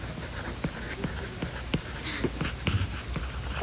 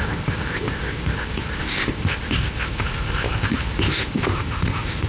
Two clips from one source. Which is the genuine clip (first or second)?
first